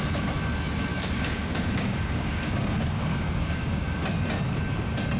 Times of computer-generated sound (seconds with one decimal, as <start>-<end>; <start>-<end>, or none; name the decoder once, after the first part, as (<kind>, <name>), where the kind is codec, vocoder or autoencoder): 0.9-4.0 (codec, DAC)